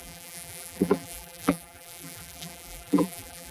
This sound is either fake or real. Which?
fake